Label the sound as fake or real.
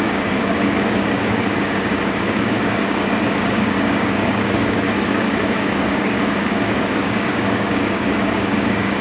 fake